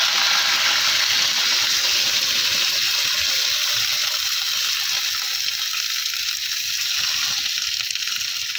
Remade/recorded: recorded